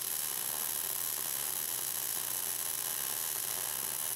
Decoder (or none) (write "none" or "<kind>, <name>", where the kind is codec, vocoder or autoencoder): none